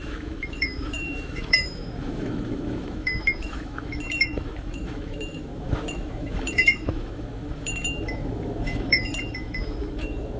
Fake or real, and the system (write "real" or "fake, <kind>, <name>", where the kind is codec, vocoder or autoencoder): fake, autoencoder, DAC-VAE